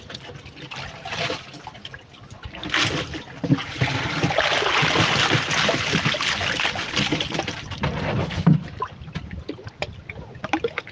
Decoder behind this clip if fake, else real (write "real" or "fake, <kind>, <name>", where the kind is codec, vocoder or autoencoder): real